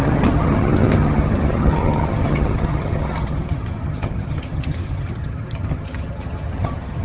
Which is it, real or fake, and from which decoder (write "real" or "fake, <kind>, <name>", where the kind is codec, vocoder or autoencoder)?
fake, vocoder, HiFi-GAN